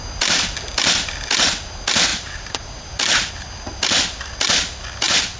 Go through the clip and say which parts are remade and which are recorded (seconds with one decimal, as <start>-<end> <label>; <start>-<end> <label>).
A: 0.0-2.1 recorded; 2.1-3.3 remade; 3.3-5.4 recorded

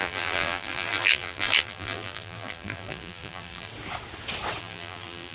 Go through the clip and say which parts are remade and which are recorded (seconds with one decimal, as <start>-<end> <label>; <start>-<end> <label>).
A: 0.0-3.7 remade; 3.7-4.6 recorded; 4.6-5.3 remade